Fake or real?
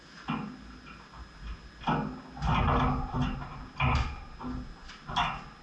real